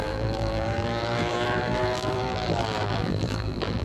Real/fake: fake